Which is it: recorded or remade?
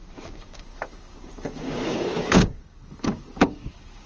remade